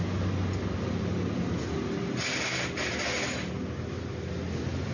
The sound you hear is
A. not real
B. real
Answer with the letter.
B